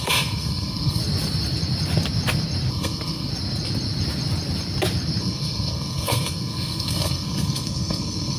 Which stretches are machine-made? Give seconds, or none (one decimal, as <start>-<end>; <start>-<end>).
0.0-1.0; 2.7-3.3; 5.2-8.4